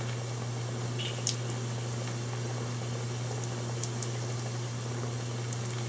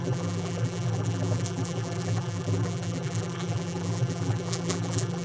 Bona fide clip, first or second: first